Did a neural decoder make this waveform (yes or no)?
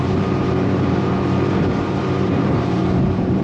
yes